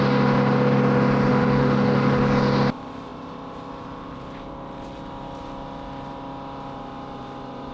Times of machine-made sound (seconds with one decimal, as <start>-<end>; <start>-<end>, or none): 1.3-2.2